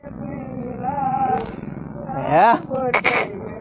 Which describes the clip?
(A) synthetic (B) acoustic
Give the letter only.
A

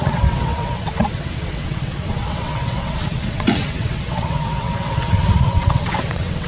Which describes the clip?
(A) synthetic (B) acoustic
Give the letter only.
A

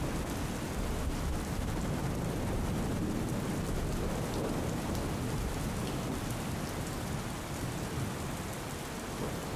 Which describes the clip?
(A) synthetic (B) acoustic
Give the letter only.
B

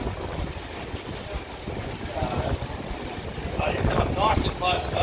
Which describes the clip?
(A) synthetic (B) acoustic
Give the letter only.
B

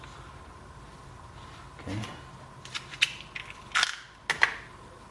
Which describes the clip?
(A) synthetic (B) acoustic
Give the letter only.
B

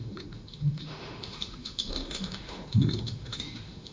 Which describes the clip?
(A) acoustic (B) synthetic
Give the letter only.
B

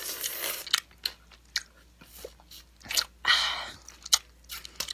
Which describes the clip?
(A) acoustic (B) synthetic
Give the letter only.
A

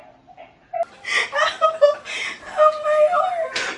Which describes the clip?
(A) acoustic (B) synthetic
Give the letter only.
A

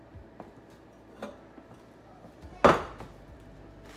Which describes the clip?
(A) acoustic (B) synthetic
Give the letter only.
A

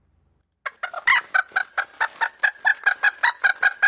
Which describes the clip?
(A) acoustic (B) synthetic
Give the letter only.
A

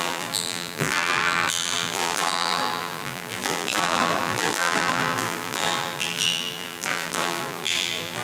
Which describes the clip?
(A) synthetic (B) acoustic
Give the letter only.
A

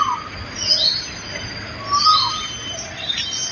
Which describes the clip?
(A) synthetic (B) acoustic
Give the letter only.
B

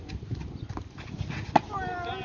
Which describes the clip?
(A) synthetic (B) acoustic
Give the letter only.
B